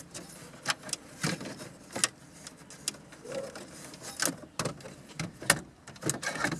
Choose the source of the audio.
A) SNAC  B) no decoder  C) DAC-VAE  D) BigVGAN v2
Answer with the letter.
B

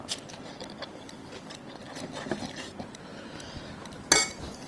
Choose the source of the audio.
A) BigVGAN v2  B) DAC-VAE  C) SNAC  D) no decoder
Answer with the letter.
D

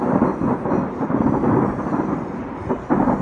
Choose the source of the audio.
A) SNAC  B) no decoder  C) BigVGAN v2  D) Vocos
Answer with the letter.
B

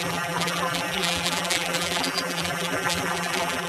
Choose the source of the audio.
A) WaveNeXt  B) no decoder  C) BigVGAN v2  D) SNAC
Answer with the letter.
C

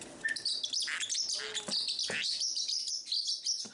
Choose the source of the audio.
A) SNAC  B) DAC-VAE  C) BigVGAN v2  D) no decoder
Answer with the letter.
D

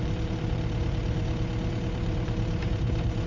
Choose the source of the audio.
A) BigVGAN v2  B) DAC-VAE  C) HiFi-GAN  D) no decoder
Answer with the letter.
A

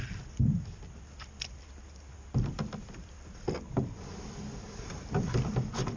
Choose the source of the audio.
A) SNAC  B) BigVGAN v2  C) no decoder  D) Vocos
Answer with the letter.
C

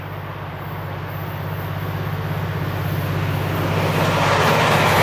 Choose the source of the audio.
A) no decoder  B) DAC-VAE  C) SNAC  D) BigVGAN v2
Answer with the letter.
A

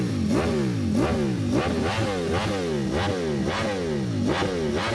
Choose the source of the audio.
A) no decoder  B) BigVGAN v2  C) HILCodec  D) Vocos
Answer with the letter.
A